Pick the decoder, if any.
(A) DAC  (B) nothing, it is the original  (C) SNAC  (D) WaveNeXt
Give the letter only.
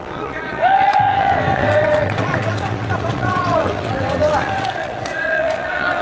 D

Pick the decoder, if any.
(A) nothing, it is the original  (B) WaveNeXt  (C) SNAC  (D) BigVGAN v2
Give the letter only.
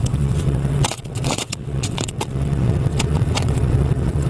B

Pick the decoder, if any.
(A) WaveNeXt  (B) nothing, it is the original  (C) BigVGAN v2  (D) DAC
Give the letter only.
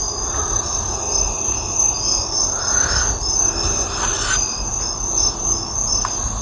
B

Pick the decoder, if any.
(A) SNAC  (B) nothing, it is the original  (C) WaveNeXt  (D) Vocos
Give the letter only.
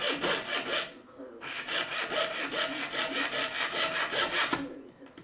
B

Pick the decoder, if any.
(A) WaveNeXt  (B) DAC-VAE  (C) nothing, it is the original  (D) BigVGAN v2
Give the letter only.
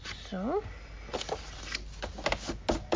C